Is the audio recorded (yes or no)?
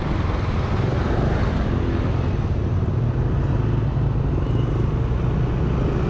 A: yes